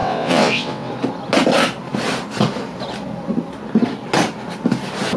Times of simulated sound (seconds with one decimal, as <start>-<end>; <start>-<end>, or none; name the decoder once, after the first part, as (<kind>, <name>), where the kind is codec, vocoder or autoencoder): 0.0-0.9 (vocoder, WaveNeXt)